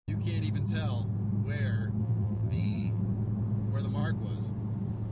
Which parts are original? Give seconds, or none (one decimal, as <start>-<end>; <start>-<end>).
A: 0.0-2.0; 3.0-5.1